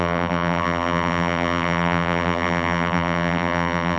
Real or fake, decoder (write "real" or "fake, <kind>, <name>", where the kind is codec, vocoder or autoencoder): fake, vocoder, BigVGAN v2